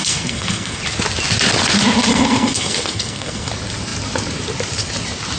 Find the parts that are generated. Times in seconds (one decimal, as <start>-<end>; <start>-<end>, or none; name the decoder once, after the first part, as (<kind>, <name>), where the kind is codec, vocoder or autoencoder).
0.0-0.8 (codec, SNAC); 2.1-3.5